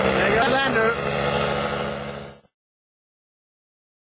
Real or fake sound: real